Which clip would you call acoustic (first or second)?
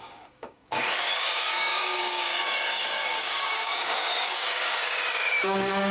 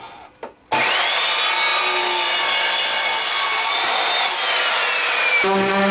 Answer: second